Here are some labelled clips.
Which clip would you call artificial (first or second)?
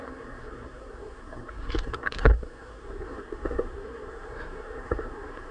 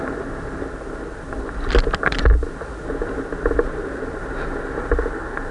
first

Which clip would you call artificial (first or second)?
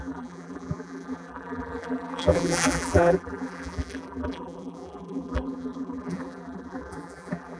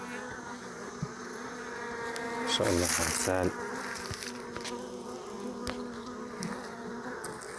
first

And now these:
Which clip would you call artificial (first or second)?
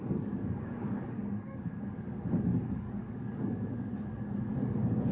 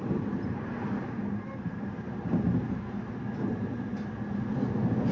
first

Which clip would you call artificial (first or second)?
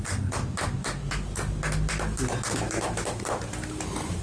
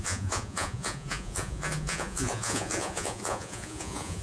second